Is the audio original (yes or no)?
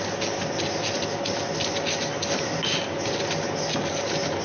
yes